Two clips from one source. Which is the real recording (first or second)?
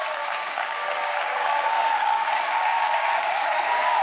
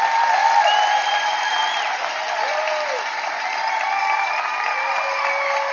second